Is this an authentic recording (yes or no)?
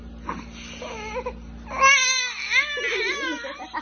yes